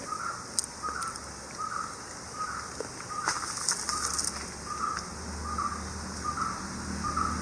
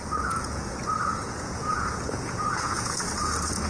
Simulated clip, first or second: second